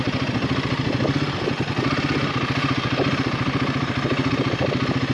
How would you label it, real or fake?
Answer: real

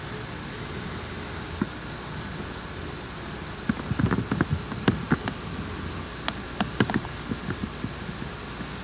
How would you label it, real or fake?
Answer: real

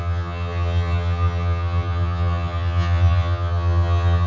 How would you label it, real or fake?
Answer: fake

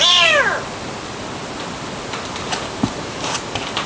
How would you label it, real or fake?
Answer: real